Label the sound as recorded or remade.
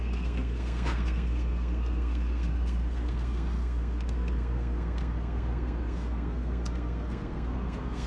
remade